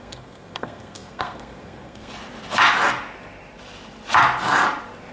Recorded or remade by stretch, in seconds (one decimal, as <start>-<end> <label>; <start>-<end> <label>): 0.0-2.1 remade; 2.1-5.1 recorded